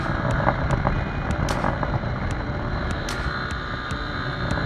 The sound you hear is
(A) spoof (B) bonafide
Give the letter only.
B